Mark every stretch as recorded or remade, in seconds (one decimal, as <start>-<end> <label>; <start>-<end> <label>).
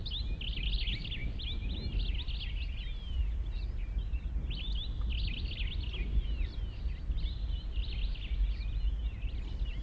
0.0-9.8 recorded